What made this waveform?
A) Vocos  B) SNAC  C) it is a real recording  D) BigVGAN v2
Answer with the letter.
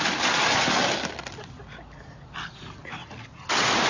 C